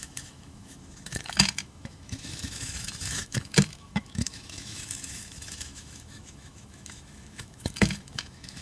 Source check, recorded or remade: remade